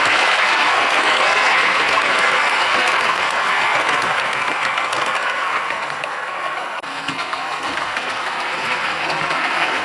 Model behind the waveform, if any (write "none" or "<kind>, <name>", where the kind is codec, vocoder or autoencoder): codec, SNAC